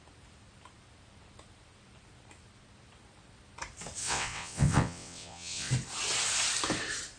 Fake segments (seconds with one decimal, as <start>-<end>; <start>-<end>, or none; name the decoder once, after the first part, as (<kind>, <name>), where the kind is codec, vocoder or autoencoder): 4.0-5.7 (vocoder, WaveNeXt)